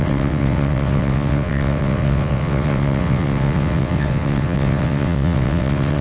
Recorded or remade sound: remade